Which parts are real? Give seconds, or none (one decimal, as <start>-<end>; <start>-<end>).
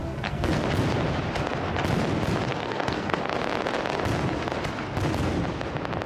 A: 0.6-2.5; 3.4-6.1